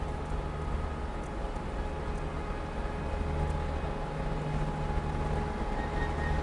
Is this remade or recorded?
recorded